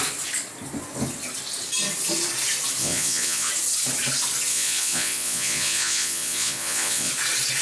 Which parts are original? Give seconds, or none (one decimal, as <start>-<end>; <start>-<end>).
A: 0.0-2.8; 3.5-4.5; 7.1-7.6

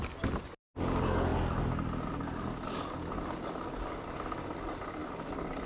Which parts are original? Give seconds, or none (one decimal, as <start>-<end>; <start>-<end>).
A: 0.0-5.7

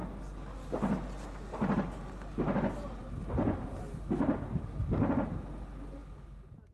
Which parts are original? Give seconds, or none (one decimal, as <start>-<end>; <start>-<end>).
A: 0.0-6.7